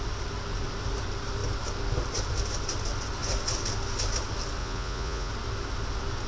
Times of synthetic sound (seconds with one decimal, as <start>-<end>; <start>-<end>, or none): 4.6-5.3

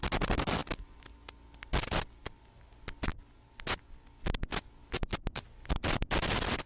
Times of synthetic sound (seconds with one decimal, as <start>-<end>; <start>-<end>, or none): none

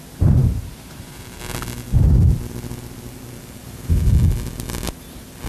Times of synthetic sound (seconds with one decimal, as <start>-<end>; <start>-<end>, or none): 0.4-1.4; 3.6-4.1